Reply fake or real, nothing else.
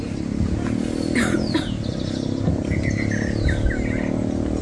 real